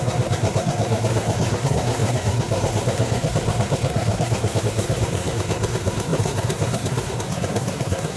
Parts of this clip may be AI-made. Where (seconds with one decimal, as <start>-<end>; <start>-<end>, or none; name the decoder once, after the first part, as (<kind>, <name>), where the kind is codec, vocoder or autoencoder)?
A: 0.0-8.2 (codec, SNAC)